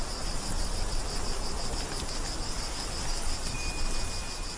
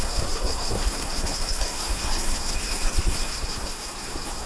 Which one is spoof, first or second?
second